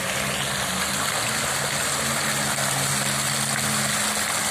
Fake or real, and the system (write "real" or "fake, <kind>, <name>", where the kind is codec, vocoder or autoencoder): real